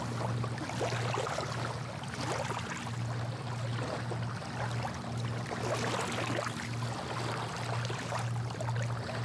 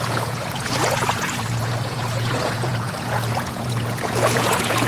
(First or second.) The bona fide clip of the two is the first